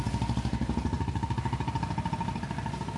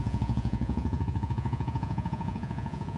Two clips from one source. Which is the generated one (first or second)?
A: second